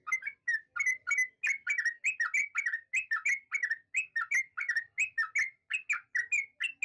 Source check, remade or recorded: recorded